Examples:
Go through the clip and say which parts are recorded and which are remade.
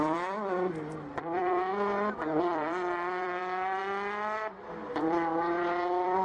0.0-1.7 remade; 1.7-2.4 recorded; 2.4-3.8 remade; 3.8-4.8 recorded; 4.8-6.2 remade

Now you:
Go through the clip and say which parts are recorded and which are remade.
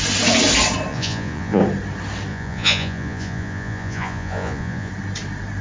0.0-0.9 recorded; 0.9-1.6 remade; 1.6-2.3 recorded; 2.3-4.9 remade; 4.9-5.6 recorded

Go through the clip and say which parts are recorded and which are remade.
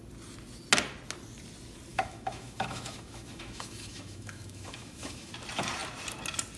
0.0-1.9 recorded; 1.9-5.3 remade; 5.3-6.6 recorded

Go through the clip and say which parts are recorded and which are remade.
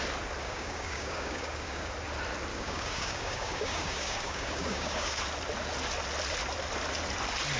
0.0-0.4 recorded; 0.4-1.9 remade; 1.9-2.5 recorded; 2.5-5.2 remade; 5.2-7.6 recorded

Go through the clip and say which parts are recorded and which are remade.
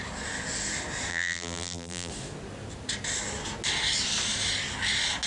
0.0-1.1 recorded; 1.1-2.1 remade; 2.1-5.3 recorded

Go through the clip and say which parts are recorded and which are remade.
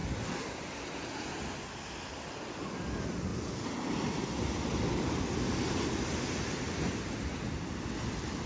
0.0-8.5 recorded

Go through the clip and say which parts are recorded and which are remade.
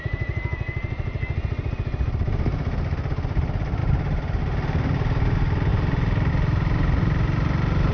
0.0-7.9 recorded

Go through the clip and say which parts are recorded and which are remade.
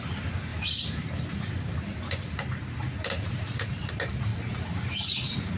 0.0-0.5 recorded; 0.5-3.9 remade; 3.9-5.6 recorded